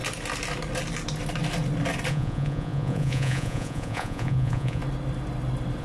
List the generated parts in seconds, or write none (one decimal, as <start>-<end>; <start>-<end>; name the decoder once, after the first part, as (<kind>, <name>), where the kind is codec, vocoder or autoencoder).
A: 2.1-4.8 (vocoder, Vocos)